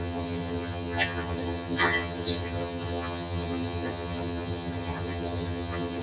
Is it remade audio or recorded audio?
remade